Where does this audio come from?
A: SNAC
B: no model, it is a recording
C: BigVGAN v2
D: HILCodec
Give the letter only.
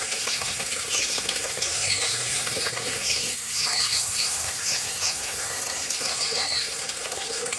A